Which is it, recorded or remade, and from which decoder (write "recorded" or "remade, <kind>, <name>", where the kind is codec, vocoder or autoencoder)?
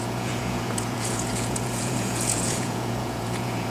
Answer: remade, vocoder, Vocos